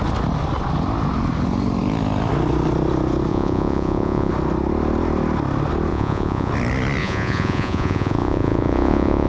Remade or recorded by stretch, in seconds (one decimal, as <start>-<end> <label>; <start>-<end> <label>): 0.0-3.3 recorded; 3.3-4.3 remade; 4.3-5.9 recorded; 5.9-6.5 remade; 6.5-7.0 recorded; 7.0-9.3 remade